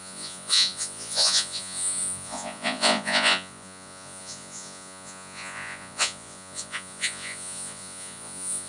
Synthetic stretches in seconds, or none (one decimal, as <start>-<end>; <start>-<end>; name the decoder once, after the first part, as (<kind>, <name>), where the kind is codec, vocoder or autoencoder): 0.0-8.7 (vocoder, Vocos)